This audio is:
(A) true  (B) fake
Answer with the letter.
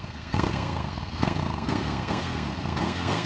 B